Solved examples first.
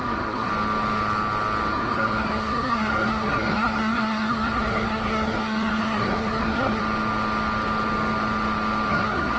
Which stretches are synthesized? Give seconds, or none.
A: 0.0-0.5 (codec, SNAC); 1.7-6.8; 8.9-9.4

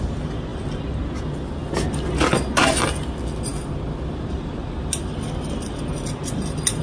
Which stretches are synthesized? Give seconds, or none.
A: none